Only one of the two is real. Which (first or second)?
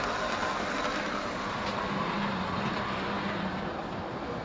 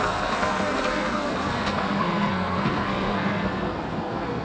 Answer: first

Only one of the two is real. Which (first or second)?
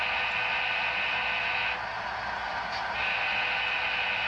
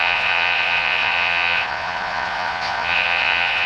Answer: first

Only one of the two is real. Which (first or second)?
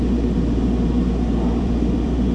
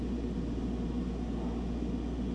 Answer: second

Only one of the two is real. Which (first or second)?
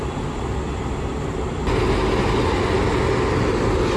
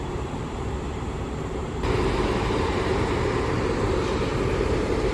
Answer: first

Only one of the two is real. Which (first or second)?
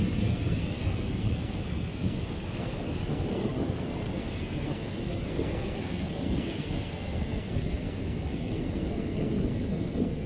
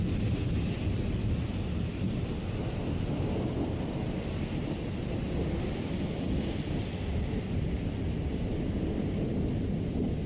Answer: second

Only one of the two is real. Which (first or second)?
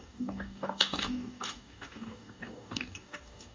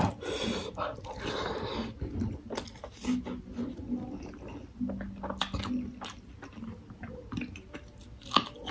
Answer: second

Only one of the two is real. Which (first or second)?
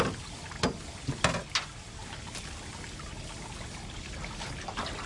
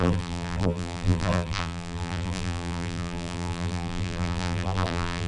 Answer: first